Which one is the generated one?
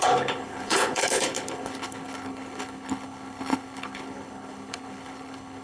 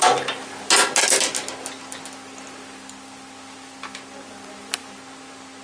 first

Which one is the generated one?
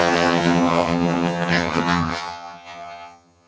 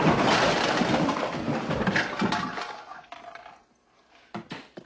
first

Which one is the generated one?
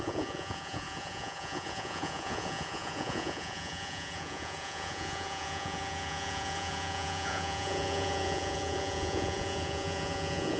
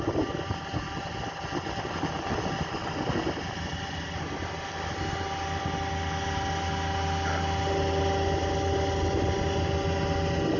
first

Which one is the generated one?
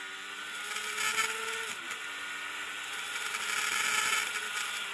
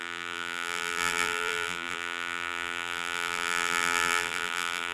second